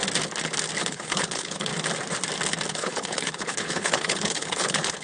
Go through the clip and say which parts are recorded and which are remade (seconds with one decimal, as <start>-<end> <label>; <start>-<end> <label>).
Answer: 0.0-0.8 recorded; 0.8-1.7 remade; 1.7-2.7 recorded; 2.7-5.0 remade